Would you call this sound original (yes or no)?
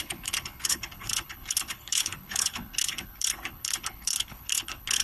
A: no